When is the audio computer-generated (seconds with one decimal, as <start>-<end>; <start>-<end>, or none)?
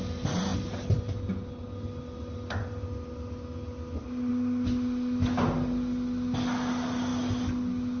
none